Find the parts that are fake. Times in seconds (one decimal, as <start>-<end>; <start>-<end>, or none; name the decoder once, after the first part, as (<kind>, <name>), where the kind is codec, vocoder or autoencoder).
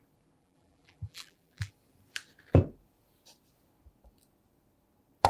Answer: 0.4-1.7 (vocoder, BigVGAN v2)